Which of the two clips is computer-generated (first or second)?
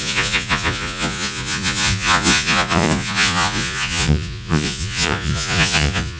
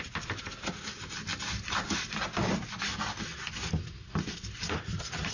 first